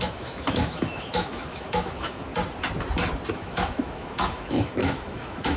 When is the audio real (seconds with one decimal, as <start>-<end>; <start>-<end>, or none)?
2.3-3.3